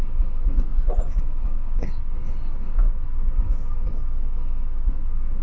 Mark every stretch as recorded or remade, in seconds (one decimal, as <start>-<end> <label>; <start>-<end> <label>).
0.0-5.4 recorded